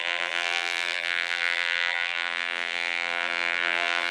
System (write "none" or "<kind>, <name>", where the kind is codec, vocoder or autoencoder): vocoder, BigVGAN v2